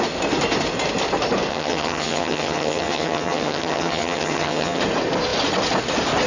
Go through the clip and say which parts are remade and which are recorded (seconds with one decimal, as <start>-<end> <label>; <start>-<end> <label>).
0.0-1.5 recorded; 1.5-4.8 remade; 4.8-6.3 recorded